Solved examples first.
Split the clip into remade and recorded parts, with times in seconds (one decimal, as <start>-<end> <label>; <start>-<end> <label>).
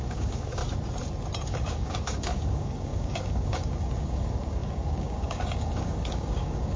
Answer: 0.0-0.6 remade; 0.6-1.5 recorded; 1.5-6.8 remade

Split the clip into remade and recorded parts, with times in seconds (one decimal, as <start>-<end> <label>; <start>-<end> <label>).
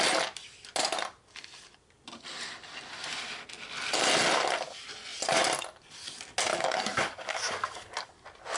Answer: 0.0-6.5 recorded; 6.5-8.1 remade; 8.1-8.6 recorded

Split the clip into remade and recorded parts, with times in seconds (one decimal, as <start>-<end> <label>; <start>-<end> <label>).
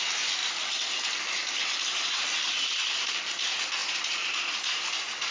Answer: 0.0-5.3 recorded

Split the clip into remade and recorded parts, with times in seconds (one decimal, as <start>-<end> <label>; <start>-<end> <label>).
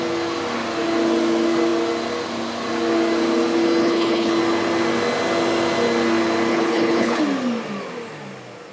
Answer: 0.0-3.8 recorded; 3.8-4.3 remade; 4.3-6.5 recorded; 6.5-7.2 remade; 7.2-8.7 recorded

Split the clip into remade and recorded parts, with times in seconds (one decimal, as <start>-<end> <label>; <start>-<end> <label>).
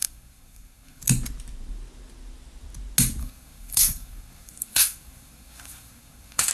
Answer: 0.0-1.0 remade; 1.0-3.2 recorded; 3.2-6.5 remade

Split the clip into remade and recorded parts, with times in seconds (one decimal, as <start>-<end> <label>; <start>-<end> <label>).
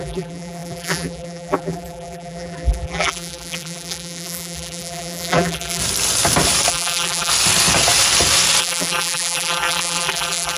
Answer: 0.0-5.8 remade; 5.8-6.7 recorded; 6.7-7.3 remade; 7.3-8.6 recorded; 8.6-10.6 remade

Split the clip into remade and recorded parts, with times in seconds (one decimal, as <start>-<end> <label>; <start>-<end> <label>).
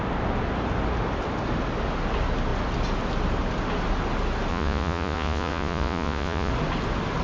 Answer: 0.0-4.5 recorded; 4.5-6.5 remade; 6.5-7.2 recorded